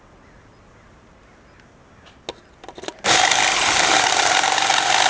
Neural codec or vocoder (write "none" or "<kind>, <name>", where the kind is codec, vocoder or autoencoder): none